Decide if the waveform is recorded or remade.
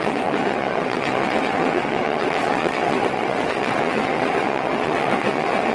remade